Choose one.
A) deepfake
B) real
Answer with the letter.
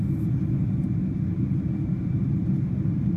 B